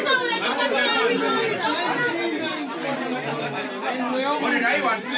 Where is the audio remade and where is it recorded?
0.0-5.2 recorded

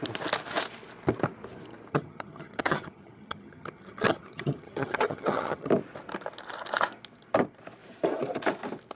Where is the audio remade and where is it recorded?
0.0-1.9 recorded; 1.9-5.7 remade; 5.7-8.9 recorded

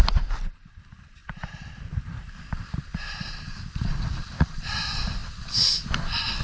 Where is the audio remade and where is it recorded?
0.0-1.2 recorded; 1.2-4.7 remade; 4.7-6.4 recorded

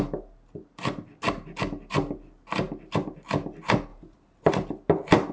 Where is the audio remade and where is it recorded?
0.0-3.9 recorded; 3.9-4.5 remade; 4.5-5.3 recorded

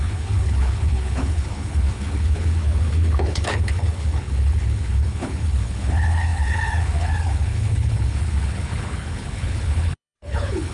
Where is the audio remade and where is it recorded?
0.0-10.7 remade

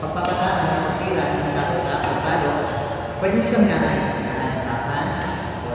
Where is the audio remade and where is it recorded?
0.0-5.7 recorded

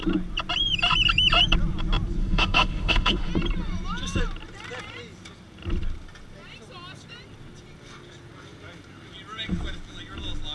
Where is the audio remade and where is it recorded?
0.0-2.2 recorded; 2.2-3.3 remade; 3.3-10.5 recorded

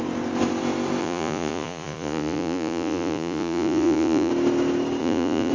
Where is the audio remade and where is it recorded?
0.0-1.0 recorded; 1.0-4.3 remade; 4.3-5.0 recorded; 5.0-5.5 remade